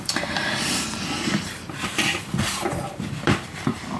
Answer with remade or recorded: remade